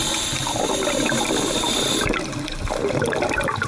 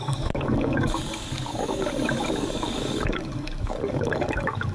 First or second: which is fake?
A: second